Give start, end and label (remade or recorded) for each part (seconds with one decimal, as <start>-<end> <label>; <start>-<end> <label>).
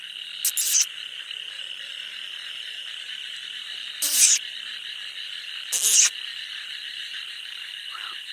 0.0-2.4 recorded; 2.4-3.9 remade; 3.9-7.0 recorded; 7.0-8.3 remade